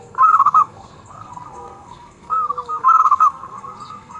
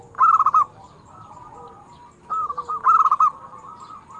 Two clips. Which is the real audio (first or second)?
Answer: second